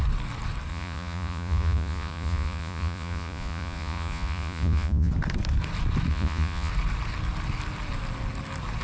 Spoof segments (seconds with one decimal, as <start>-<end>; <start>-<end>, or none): 0.7-5.1; 6.1-6.7